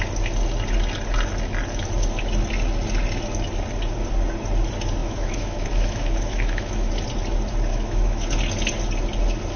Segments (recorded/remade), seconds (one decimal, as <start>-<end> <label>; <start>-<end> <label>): 0.0-5.0 recorded; 5.0-6.9 remade; 6.9-7.7 recorded; 7.7-8.2 remade; 8.2-9.6 recorded